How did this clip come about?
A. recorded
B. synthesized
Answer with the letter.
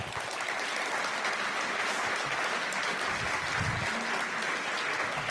A